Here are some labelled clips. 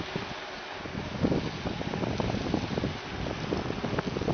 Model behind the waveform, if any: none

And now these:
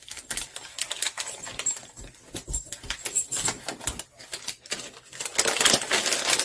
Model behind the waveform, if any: none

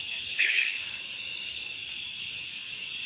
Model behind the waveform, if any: codec, DAC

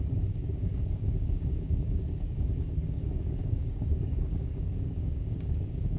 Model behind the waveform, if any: codec, DAC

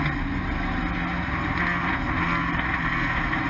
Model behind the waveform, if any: none